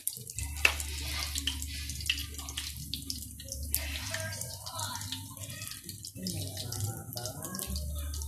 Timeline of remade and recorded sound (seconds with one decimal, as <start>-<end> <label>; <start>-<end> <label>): 0.0-8.3 recorded